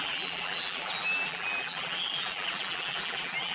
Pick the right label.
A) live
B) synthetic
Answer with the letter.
B